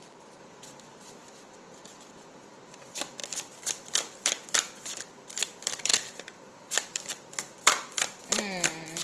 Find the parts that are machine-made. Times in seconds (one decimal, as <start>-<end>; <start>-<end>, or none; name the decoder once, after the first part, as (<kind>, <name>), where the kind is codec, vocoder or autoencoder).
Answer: 0.0-9.0 (vocoder, BigVGAN v2)